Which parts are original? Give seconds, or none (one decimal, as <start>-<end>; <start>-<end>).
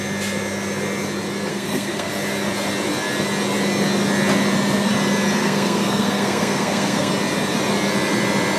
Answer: 0.0-1.5; 2.1-5.4; 7.1-8.6